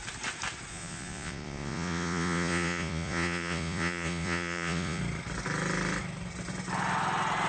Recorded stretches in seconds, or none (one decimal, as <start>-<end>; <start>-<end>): 0.0-0.7; 5.0-7.5